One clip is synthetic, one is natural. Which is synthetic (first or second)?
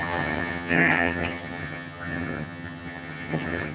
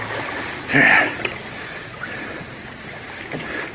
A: first